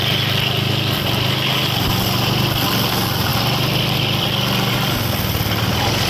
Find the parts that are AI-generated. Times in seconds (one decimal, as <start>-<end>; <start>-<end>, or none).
none